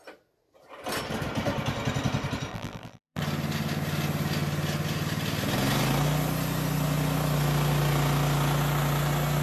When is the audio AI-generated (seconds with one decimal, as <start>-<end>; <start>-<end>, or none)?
2.5-3.2